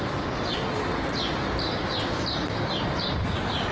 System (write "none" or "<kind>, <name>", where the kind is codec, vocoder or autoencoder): none